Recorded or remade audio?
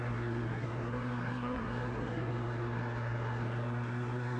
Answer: remade